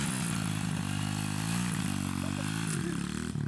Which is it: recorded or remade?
recorded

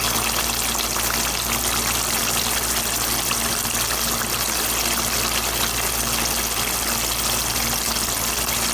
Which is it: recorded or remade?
recorded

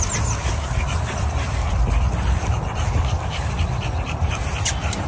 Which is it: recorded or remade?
remade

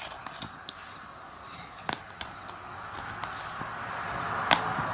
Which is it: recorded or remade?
recorded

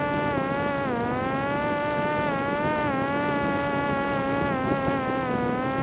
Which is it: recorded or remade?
recorded